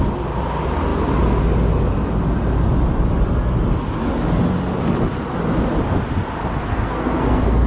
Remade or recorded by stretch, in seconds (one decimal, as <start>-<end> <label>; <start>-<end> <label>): 0.0-6.7 recorded; 6.7-7.7 remade